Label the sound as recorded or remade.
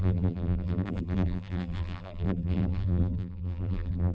remade